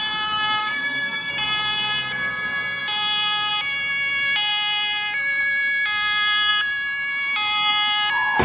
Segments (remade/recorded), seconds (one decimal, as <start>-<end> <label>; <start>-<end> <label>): 0.0-0.6 recorded; 0.6-1.3 remade; 1.3-8.4 recorded

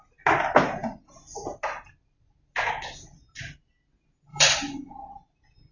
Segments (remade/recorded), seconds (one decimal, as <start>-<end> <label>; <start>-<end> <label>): 0.0-4.3 recorded; 4.3-4.9 remade; 4.9-5.7 recorded

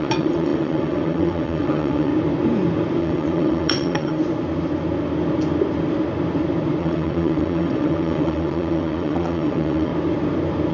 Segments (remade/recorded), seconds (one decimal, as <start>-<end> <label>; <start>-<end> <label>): 0.0-2.1 remade; 2.1-3.0 recorded; 3.0-4.2 remade; 4.2-6.8 recorded; 6.8-9.9 remade; 9.9-10.7 recorded

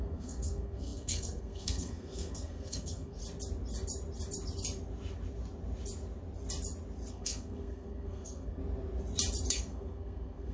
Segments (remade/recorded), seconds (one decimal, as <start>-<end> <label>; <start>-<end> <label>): 0.0-3.2 remade; 3.2-7.1 recorded; 7.1-8.6 remade; 8.6-9.5 recorded; 9.5-10.5 remade